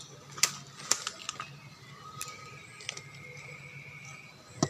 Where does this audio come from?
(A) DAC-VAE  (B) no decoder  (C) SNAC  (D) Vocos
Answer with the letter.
B